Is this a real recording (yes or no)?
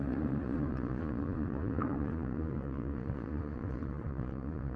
no